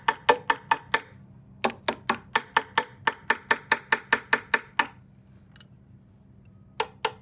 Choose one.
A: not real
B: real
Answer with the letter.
B